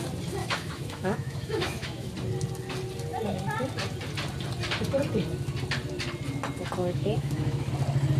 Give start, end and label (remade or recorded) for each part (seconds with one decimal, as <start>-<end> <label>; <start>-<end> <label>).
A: 0.0-0.4 recorded; 0.4-2.1 remade; 2.1-6.8 recorded; 6.8-7.7 remade; 7.7-8.2 recorded